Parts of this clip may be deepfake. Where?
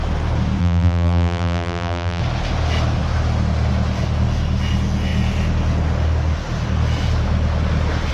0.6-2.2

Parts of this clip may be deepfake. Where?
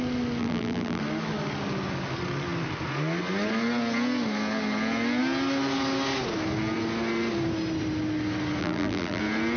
0.4-1.0; 8.6-9.2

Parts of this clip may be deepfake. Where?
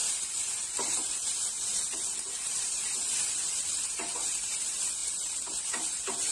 0.0-6.3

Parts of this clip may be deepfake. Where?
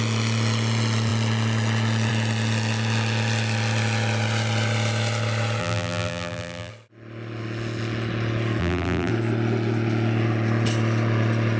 5.6-6.7; 8.6-9.1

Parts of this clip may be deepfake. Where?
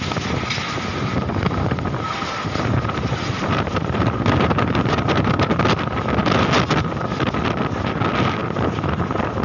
0.9-5.6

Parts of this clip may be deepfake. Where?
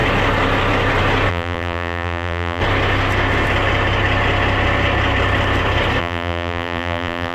1.3-2.6; 6.0-7.3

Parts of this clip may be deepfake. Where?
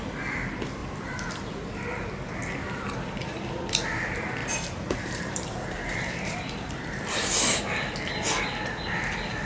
0.8-1.3; 4.4-7.2